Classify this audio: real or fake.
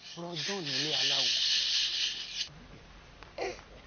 real